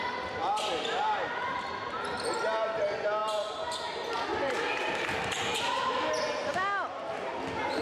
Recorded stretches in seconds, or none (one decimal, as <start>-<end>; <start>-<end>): 0.0-0.4; 1.9-4.3; 6.5-7.8